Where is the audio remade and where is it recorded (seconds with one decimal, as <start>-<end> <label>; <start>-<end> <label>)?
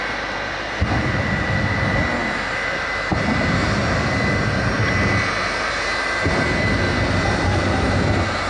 0.0-8.5 recorded